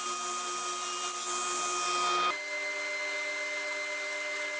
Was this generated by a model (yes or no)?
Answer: no